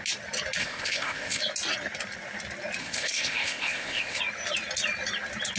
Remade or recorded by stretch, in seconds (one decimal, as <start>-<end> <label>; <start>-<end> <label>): 0.0-0.6 recorded; 0.6-1.4 remade; 1.4-2.8 recorded; 2.8-4.2 remade; 4.2-5.6 recorded

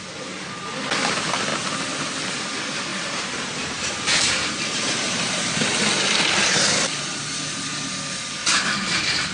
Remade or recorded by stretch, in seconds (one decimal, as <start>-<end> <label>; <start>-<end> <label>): 0.0-2.9 recorded; 2.9-7.0 remade; 7.0-9.3 recorded

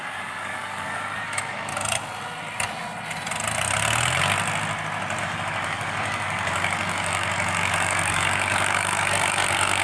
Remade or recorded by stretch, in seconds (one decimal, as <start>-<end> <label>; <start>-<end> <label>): 0.0-1.7 remade; 1.7-5.2 recorded; 5.2-9.8 remade

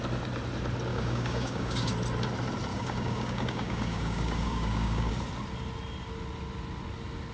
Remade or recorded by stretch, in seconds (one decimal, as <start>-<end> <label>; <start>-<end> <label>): 0.0-0.9 recorded; 0.9-1.9 remade; 1.9-2.7 recorded; 2.7-5.1 remade; 5.1-7.3 recorded

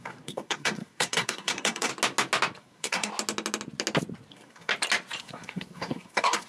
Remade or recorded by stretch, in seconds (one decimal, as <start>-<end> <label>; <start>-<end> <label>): 0.0-1.9 remade; 1.9-2.6 recorded; 2.6-3.1 remade; 3.1-4.3 recorded; 4.3-4.7 remade; 4.7-5.2 recorded; 5.2-6.5 remade